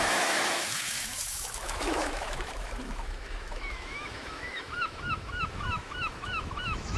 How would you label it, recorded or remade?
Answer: remade